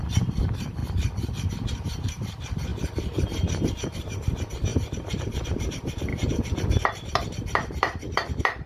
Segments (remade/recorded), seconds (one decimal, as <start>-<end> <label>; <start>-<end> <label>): 0.0-0.8 remade; 0.8-1.5 recorded; 1.5-8.7 remade